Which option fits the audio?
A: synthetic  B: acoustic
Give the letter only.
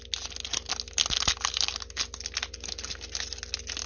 B